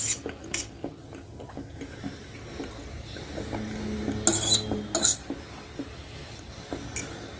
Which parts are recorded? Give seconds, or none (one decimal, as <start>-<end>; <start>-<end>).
0.0-7.4